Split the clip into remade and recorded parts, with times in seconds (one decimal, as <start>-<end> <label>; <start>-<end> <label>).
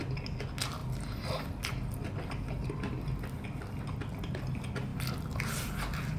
0.0-6.2 recorded